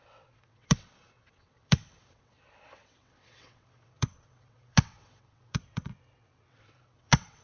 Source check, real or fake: fake